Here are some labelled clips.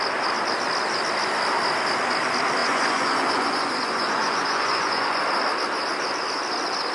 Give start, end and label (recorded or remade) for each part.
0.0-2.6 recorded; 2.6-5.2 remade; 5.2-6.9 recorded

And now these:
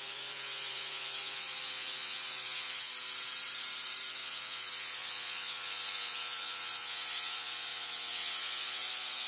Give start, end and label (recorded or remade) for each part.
0.0-2.9 remade; 2.9-4.1 recorded; 4.1-9.3 remade

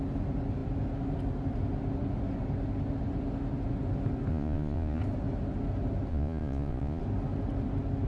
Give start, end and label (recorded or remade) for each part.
0.0-4.3 recorded; 4.3-5.0 remade; 5.0-6.1 recorded; 6.1-7.0 remade; 7.0-8.1 recorded

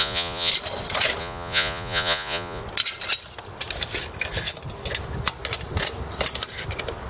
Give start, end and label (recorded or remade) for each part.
0.0-0.5 remade; 0.5-1.2 recorded; 1.2-2.6 remade; 2.6-7.1 recorded

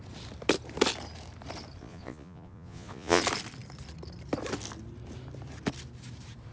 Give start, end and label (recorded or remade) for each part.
0.0-1.8 recorded; 1.8-3.2 remade; 3.2-6.5 recorded

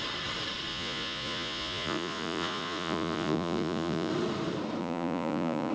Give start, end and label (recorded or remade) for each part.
0.0-0.7 recorded; 0.7-4.1 remade; 4.1-4.8 recorded; 4.8-5.7 remade